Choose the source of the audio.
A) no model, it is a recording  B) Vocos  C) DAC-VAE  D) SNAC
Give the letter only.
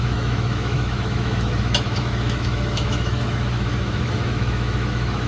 C